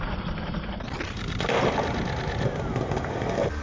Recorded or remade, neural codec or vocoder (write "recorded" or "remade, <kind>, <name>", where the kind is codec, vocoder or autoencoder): remade, vocoder, BigVGAN v2